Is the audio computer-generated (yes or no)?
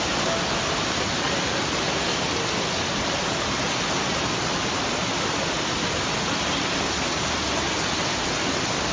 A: no